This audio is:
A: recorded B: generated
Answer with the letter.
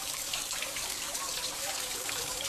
B